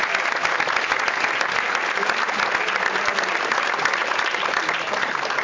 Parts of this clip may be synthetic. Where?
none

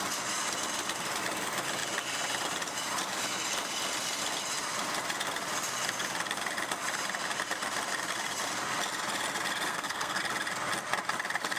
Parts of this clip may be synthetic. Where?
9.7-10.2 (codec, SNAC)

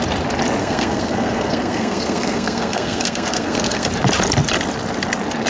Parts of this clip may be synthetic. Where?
0.6-3.9 (codec, SNAC)

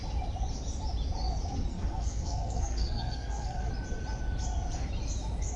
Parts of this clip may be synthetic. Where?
1.7-3.7 (codec, SNAC)